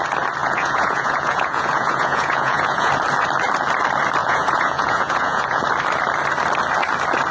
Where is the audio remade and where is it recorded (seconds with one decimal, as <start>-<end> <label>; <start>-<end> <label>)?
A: 0.0-0.4 recorded; 0.4-2.9 remade; 2.9-4.2 recorded; 4.2-5.6 remade; 5.6-7.3 recorded